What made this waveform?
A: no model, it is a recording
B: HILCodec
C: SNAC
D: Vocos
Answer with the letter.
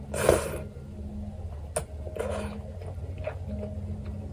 A